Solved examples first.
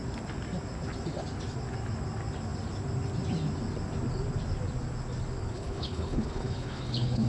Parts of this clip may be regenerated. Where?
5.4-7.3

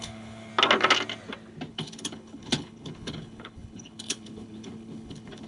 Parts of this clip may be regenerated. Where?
0.0-0.5; 1.7-5.5

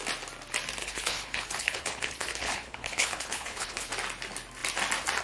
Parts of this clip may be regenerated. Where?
0.8-3.9